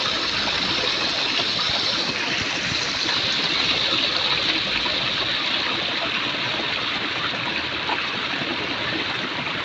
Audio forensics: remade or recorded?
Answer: recorded